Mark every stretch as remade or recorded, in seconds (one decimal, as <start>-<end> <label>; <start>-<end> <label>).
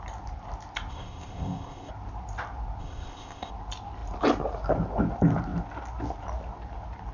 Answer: 0.0-0.9 recorded; 0.9-1.9 remade; 1.9-2.8 recorded; 2.8-3.5 remade; 3.5-7.1 recorded